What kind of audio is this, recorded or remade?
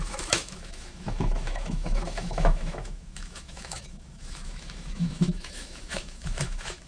remade